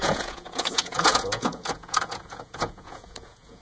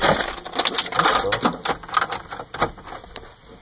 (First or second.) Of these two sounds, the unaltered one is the second